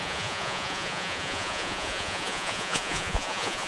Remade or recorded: remade